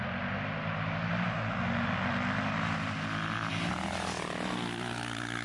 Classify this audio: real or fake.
real